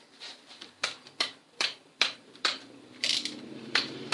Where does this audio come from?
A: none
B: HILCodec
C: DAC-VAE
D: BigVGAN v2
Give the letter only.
D